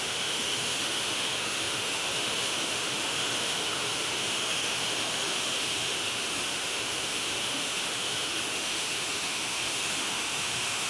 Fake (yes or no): yes